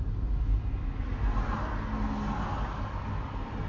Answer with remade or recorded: recorded